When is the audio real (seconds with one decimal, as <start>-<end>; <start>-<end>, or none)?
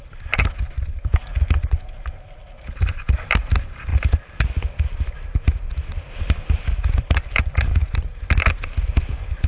1.3-2.0; 7.7-8.5